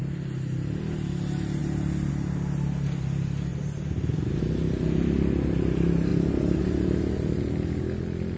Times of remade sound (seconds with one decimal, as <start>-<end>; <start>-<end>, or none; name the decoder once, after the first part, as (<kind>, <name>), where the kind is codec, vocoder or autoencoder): none